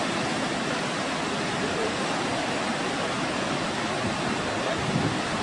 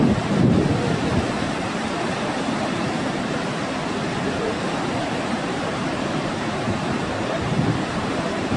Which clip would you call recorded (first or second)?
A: first